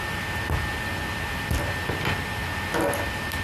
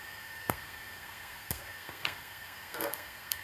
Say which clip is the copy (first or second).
second